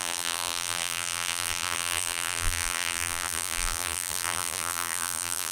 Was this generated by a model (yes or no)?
yes